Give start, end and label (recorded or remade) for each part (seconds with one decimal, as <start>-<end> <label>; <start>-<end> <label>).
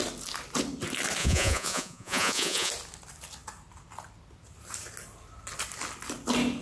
0.0-1.2 recorded; 1.2-2.7 remade; 2.7-6.6 recorded